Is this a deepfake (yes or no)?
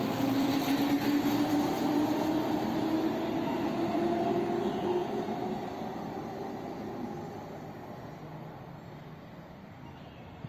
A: no